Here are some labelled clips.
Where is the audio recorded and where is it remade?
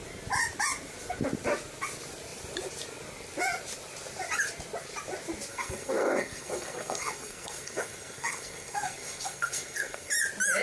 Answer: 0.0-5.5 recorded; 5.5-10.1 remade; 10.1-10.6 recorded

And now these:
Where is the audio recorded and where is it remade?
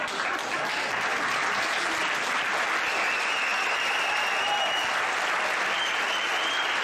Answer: 0.0-6.8 recorded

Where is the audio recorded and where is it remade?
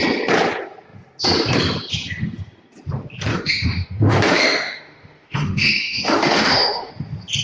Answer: 0.0-3.3 recorded; 3.3-6.9 remade; 6.9-7.4 recorded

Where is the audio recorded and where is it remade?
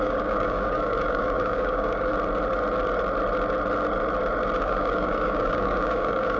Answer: 0.0-2.1 remade; 2.1-4.6 recorded; 4.6-6.4 remade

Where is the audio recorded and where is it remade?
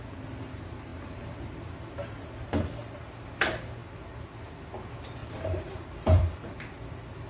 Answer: 0.0-5.2 recorded; 5.2-6.5 remade; 6.5-7.3 recorded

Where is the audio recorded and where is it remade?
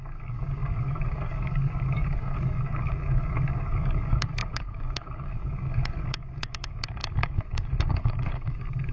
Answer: 0.0-8.9 remade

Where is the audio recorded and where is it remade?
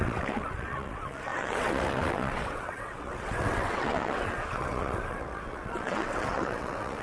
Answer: 0.0-7.0 remade